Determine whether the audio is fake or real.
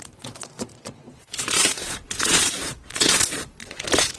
fake